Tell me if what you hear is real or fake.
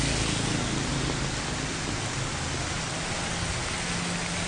real